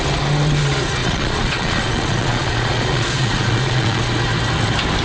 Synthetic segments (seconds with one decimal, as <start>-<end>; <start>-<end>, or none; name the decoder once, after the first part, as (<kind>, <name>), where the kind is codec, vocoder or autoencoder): 1.0-4.0 (vocoder, Vocos)